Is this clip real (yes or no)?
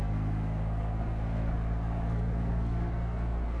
no